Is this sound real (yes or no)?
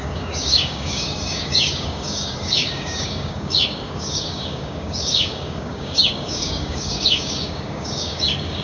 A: no